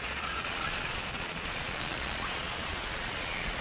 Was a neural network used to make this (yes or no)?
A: yes